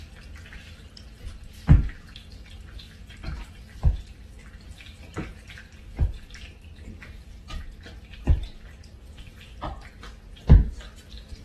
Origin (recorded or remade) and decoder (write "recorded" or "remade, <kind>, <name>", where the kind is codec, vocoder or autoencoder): recorded